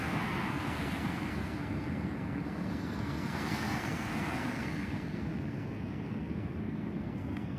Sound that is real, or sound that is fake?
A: fake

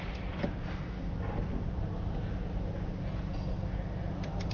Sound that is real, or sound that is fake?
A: real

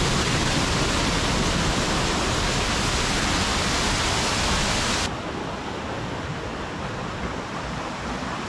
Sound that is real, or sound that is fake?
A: real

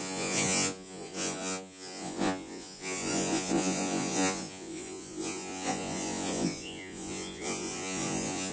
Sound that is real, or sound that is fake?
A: fake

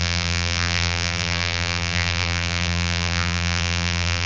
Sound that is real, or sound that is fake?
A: fake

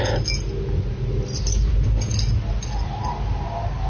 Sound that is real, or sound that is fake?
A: real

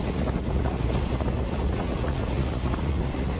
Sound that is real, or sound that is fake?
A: fake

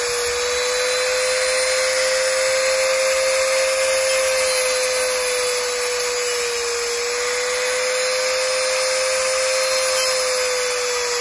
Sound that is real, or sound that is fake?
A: real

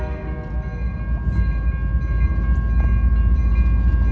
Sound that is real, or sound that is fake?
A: real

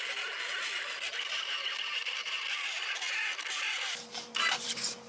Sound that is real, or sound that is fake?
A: real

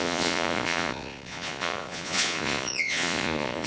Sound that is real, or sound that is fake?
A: fake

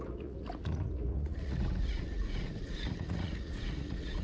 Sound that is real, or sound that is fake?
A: fake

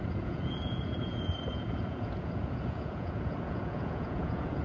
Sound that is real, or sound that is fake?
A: fake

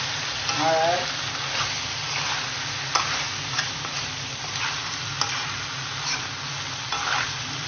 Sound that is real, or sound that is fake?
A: real